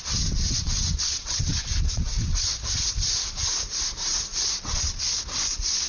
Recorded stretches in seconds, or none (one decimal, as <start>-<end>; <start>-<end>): 2.5-4.6